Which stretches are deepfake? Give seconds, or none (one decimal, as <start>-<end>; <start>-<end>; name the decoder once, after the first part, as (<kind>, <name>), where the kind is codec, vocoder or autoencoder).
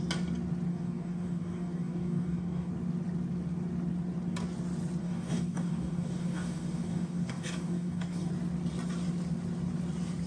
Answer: 0.7-2.7 (codec, DAC); 5.0-8.3